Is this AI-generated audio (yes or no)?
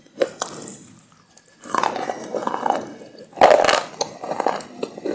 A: no